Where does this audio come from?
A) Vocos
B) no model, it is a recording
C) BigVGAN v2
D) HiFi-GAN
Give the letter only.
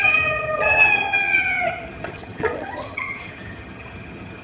D